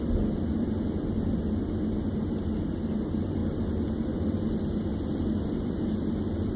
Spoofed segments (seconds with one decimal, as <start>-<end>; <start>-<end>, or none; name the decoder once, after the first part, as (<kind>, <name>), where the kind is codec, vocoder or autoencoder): none

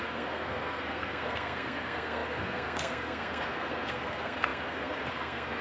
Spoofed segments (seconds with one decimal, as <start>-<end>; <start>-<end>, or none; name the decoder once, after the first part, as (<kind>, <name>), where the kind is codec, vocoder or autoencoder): 0.0-5.6 (codec, SNAC)

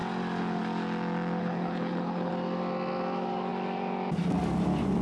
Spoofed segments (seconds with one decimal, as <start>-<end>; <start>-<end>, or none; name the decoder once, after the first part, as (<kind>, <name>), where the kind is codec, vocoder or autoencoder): 1.4-2.3 (codec, HILCodec)

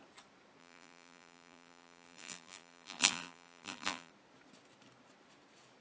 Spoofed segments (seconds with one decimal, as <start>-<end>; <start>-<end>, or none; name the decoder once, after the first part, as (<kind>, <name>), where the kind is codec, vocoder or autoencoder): 0.6-4.1 (vocoder, BigVGAN v2)